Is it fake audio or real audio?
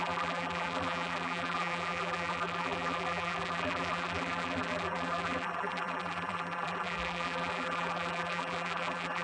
fake